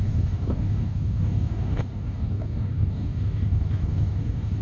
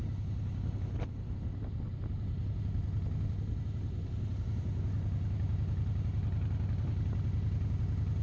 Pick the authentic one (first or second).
second